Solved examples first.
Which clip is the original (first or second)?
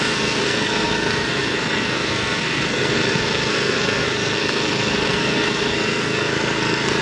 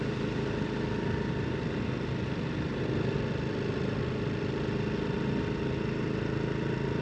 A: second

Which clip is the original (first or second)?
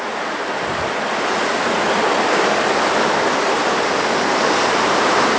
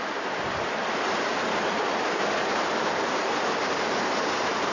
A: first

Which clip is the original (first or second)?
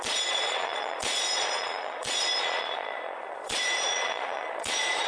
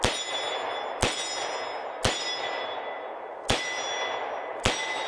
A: second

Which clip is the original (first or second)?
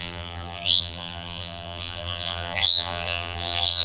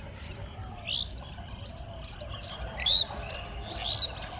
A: second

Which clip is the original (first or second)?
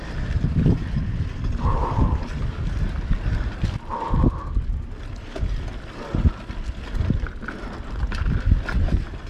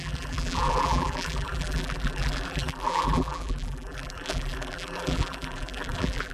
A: first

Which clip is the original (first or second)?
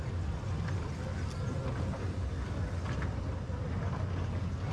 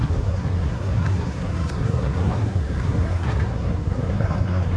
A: first